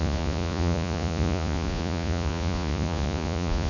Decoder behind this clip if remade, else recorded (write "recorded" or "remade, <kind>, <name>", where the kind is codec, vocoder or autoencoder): remade, vocoder, Vocos